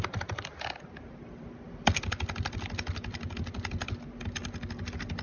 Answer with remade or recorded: recorded